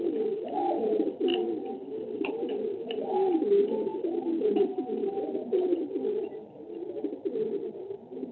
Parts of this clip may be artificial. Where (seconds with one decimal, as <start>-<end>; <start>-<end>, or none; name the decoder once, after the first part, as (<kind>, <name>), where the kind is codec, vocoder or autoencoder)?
none